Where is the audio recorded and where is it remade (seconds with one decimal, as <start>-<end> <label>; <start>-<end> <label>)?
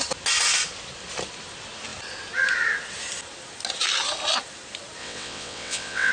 0.0-5.0 recorded; 5.0-6.1 remade